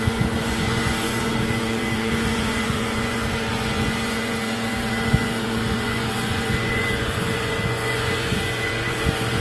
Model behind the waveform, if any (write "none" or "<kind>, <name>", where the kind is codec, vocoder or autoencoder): vocoder, Vocos